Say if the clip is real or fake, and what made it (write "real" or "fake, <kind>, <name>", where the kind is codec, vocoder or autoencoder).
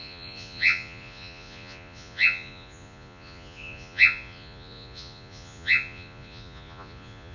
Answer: fake, vocoder, Vocos